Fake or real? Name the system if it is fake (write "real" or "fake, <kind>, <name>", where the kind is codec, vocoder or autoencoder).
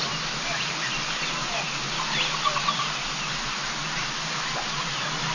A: real